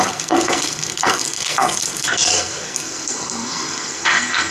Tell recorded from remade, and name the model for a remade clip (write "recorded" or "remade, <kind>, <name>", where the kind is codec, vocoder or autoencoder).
remade, codec, SNAC